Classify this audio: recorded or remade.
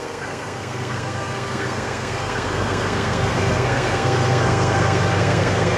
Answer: remade